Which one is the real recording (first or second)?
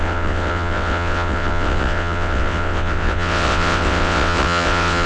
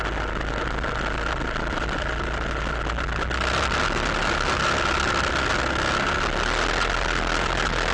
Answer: second